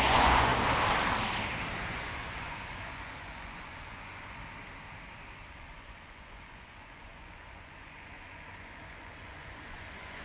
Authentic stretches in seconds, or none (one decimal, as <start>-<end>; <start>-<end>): 0.5-1.8; 4.4-5.5